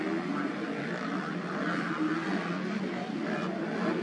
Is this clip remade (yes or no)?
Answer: no